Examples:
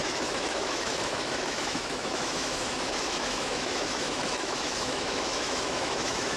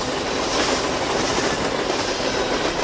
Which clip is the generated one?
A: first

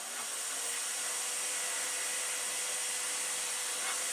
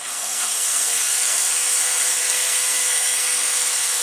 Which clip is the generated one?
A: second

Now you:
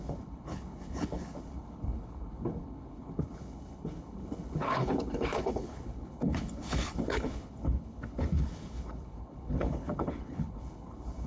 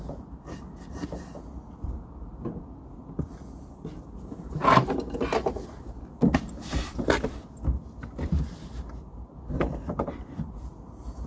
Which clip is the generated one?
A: first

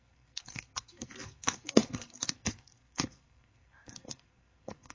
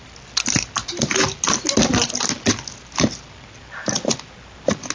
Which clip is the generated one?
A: first